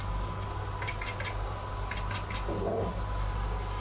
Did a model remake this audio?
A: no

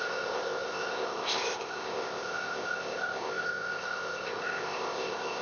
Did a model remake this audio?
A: yes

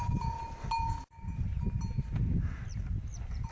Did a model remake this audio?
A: no